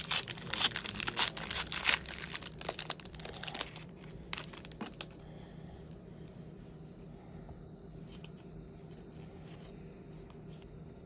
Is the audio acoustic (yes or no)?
yes